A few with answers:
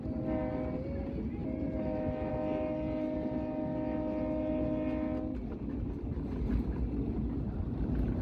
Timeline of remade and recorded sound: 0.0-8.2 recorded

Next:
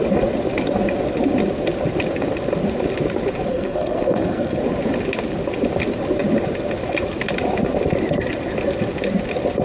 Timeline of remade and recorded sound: 0.0-3.5 recorded; 3.5-4.6 remade; 4.6-9.6 recorded

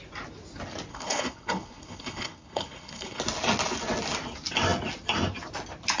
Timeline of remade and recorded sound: 0.0-0.9 recorded; 0.9-3.2 remade; 3.2-6.0 recorded

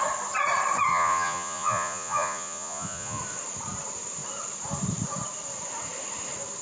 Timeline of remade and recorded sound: 0.0-0.9 recorded; 0.9-3.2 remade; 3.2-6.6 recorded

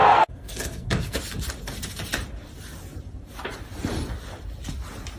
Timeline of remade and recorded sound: 0.0-1.2 remade; 1.2-5.2 recorded

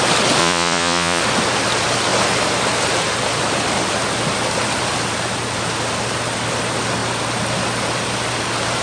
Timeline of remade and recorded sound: 0.0-0.4 recorded; 0.4-1.2 remade; 1.2-8.8 recorded

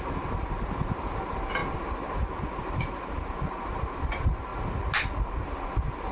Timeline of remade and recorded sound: 0.0-1.6 remade; 1.6-4.1 recorded; 4.1-4.5 remade; 4.5-5.4 recorded; 5.4-6.1 remade

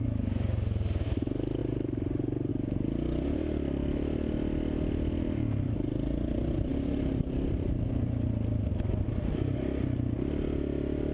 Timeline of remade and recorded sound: 0.0-1.6 recorded; 1.6-2.5 remade; 2.5-6.7 recorded; 6.7-8.3 remade; 8.3-11.1 recorded